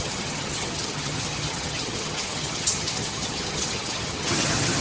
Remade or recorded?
remade